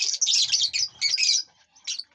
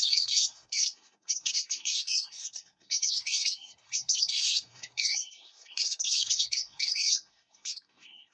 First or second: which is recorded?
first